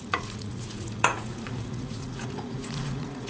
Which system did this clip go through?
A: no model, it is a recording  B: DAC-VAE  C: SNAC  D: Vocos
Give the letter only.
D